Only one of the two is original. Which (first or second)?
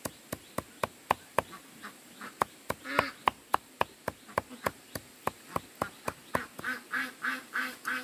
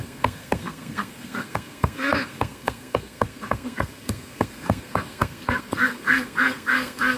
first